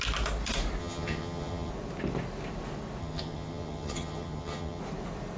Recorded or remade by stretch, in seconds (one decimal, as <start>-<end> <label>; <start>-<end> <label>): 0.0-0.8 recorded; 0.8-1.7 remade; 1.7-3.0 recorded; 3.0-4.8 remade; 4.8-5.4 recorded